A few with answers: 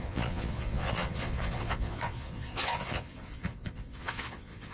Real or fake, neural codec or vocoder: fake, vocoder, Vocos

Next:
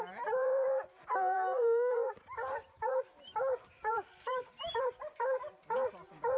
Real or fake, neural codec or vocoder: fake, vocoder, BigVGAN v2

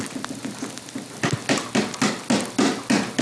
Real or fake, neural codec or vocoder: real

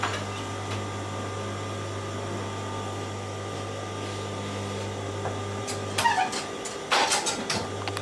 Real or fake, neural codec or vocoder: real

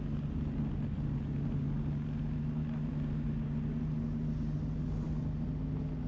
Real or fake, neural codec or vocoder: real